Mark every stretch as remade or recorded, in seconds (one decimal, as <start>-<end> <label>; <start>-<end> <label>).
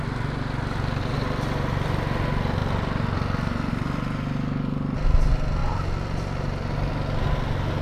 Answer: 0.0-7.8 recorded